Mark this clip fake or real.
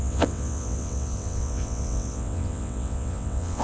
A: fake